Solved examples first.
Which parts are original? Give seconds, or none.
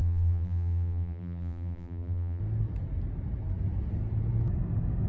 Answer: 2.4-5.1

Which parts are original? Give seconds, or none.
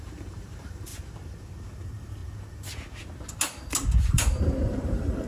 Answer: 0.9-1.7; 2.2-4.0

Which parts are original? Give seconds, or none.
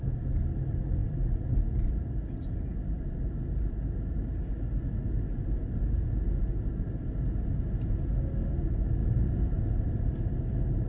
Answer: 0.0-1.0; 3.0-9.0; 9.6-10.9